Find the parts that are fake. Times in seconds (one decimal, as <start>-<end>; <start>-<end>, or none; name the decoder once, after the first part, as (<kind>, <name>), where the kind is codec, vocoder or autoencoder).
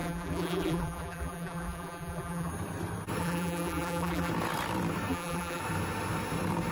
0.0-2.5 (vocoder, BigVGAN v2); 3.2-4.3; 5.1-5.6